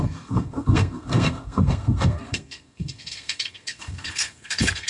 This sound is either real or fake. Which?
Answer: fake